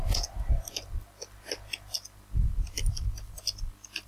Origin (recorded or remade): recorded